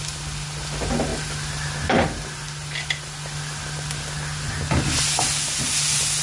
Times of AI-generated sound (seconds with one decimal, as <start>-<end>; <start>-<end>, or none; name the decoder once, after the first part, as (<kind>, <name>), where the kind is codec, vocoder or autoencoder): none